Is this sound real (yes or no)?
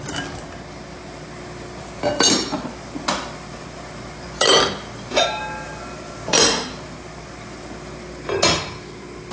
yes